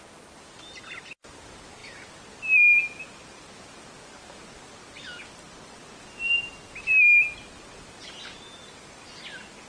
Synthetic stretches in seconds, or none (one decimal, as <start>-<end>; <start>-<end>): none